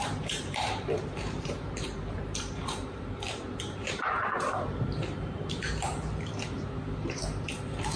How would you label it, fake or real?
fake